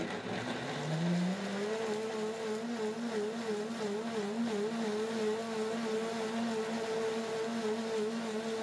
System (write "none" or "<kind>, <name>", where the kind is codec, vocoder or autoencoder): none